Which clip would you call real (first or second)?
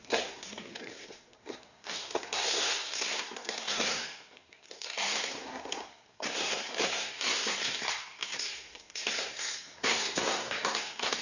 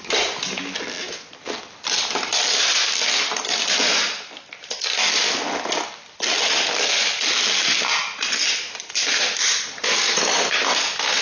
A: second